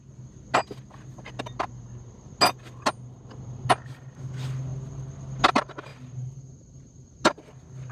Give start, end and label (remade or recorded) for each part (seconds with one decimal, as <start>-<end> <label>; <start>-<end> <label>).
0.0-7.9 recorded